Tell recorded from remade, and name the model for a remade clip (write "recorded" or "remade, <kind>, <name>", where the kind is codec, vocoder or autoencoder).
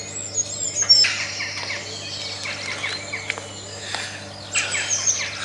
recorded